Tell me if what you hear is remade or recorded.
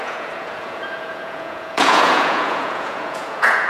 remade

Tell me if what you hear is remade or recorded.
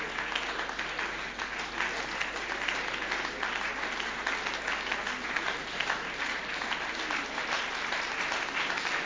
recorded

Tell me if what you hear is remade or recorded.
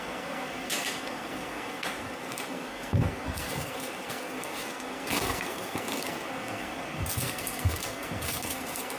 remade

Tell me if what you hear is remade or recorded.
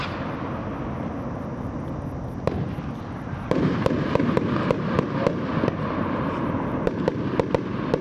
recorded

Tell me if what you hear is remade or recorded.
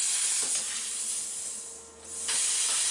recorded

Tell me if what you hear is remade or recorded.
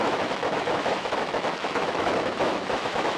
remade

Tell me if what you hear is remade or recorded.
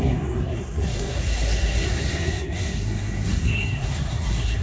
remade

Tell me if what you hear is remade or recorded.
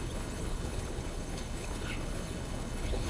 remade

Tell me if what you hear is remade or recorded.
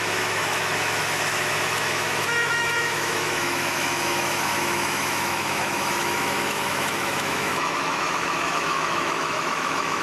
remade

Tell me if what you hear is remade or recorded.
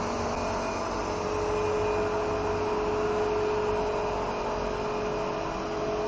recorded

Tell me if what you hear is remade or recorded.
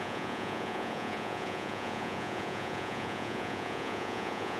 remade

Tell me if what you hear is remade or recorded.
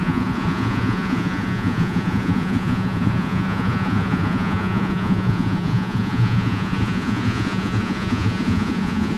remade